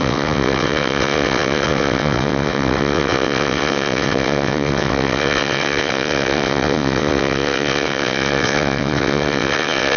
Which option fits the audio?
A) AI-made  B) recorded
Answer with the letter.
A